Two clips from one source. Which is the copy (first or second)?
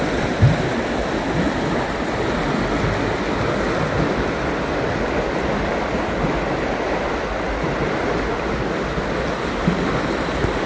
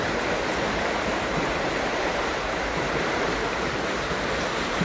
second